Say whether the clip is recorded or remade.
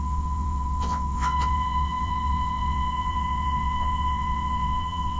remade